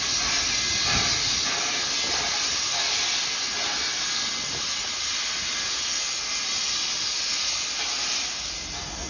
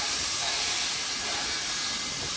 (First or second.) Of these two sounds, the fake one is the second